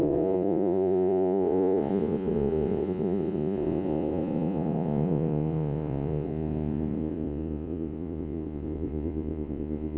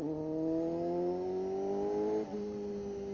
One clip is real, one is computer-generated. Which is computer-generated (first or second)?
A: first